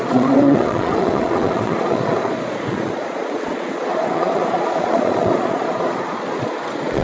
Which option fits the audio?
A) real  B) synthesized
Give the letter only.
B